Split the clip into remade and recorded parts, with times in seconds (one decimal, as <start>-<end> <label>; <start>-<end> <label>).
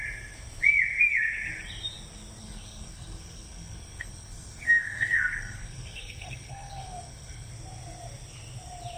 0.0-2.4 recorded; 2.4-7.5 remade; 7.5-9.0 recorded